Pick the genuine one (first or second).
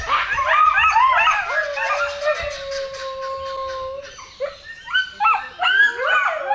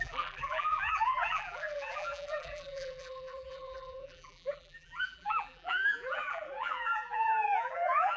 first